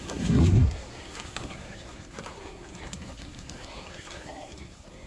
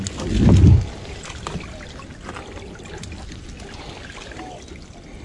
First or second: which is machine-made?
first